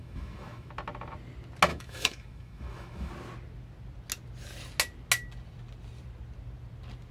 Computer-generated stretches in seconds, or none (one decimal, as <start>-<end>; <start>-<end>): 0.0-0.7; 1.7-3.1